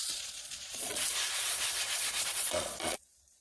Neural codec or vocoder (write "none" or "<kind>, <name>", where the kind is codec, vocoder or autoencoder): vocoder, Vocos